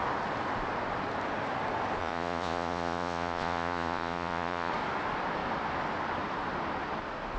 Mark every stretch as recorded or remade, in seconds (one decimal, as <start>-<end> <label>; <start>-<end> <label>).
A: 0.0-2.0 recorded; 2.0-4.7 remade; 4.7-7.4 recorded